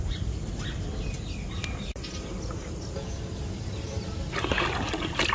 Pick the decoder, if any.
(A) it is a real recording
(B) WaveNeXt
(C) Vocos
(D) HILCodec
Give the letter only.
A